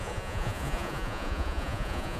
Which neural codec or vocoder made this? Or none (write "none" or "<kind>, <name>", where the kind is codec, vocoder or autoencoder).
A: vocoder, Vocos